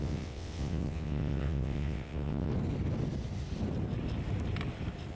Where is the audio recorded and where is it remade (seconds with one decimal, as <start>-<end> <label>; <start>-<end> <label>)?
0.0-2.5 remade; 2.5-5.1 recorded